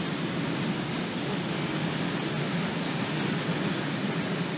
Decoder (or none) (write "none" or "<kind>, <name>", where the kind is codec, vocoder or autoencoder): none